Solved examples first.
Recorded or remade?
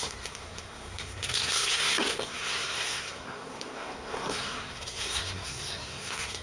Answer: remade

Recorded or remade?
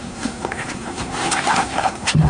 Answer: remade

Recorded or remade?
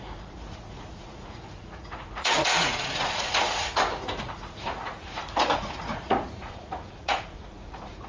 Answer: remade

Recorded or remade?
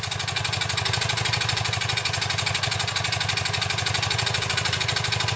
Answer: recorded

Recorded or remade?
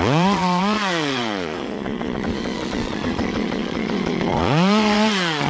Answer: remade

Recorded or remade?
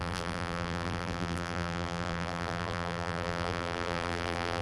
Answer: remade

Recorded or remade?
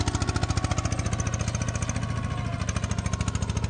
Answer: recorded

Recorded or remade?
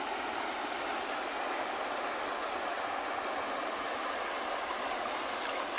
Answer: recorded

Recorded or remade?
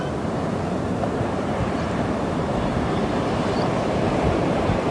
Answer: remade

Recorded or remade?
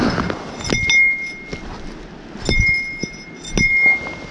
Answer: recorded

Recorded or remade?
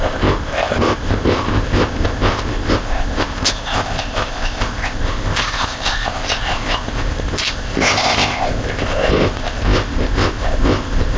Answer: remade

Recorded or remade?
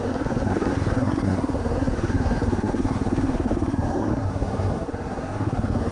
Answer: remade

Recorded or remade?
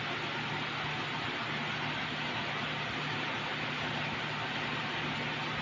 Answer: recorded